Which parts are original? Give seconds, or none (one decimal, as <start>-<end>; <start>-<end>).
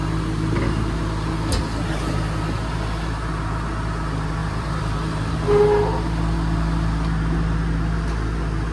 0.0-4.4; 5.3-8.7